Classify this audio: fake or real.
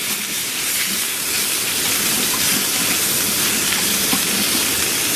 real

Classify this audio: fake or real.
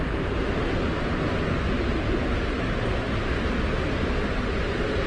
real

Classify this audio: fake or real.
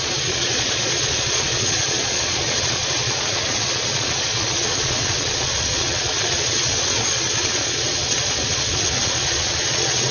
fake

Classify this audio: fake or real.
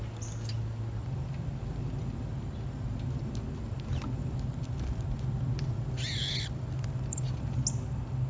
real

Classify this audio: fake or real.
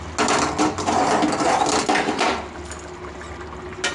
real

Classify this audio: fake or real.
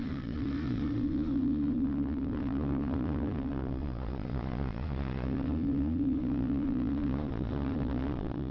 fake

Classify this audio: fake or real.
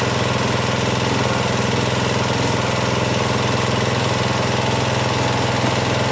real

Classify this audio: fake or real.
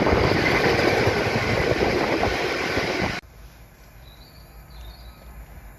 real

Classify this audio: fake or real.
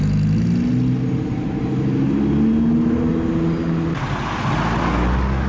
real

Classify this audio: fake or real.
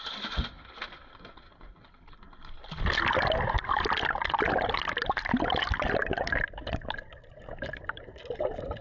real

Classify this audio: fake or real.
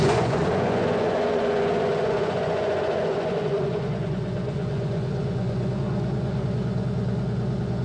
fake